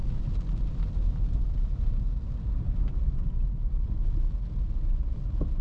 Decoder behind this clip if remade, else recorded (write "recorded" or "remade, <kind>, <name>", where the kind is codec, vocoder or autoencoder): recorded